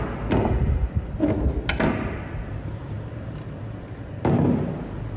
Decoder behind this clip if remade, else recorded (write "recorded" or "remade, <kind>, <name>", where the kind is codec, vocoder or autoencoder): recorded